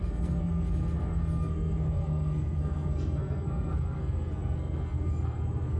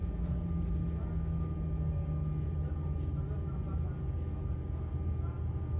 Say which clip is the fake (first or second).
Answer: first